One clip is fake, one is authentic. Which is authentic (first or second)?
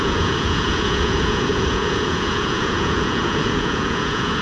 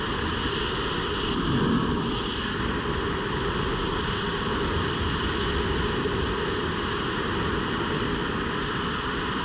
second